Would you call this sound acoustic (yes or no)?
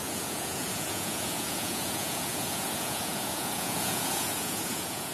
no